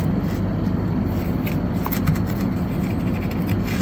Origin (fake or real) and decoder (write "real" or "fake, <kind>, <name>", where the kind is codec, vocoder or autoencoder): real